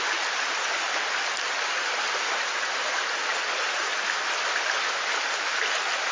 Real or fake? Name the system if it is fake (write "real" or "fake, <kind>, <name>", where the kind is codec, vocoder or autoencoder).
real